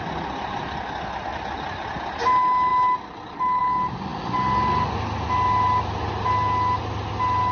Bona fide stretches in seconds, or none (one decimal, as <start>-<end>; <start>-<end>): 0.0-7.5